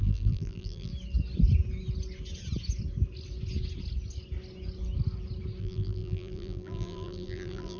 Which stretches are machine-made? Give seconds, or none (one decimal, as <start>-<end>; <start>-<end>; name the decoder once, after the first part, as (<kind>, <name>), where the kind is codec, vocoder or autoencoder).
0.0-0.9 (vocoder, BigVGAN v2); 5.6-7.8